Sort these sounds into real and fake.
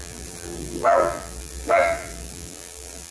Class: fake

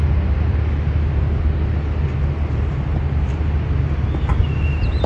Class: real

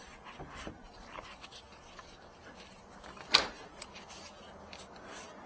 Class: real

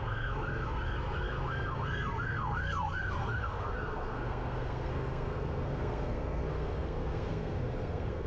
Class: fake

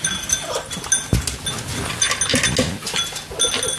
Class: real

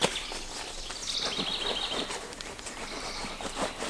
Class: real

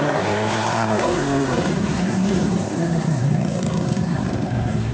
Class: fake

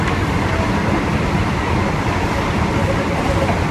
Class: fake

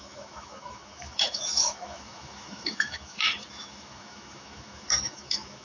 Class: fake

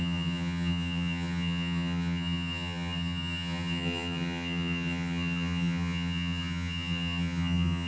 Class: fake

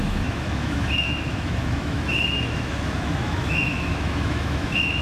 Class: fake